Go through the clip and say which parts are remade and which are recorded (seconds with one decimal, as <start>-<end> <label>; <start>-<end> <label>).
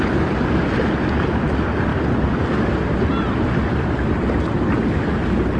0.0-5.6 recorded